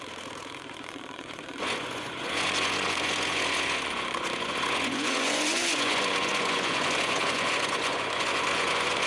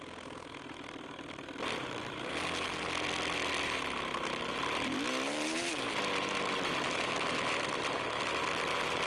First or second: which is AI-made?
first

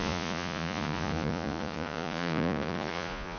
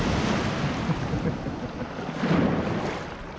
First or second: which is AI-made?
first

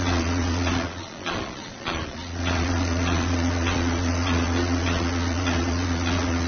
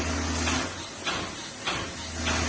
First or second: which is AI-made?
first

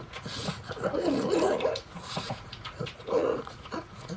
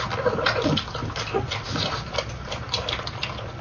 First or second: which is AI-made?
first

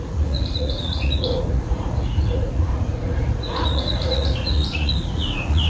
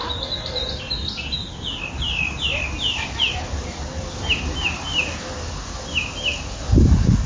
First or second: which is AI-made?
first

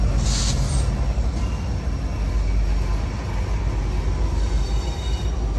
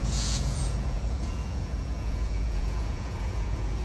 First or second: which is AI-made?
second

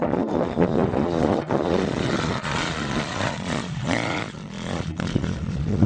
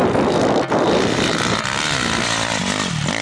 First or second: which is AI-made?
first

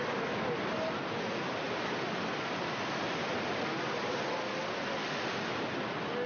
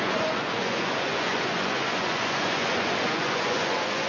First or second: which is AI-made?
second